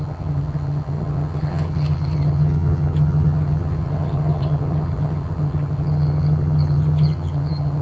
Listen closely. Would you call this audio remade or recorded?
remade